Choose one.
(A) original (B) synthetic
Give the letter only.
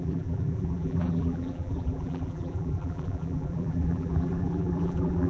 B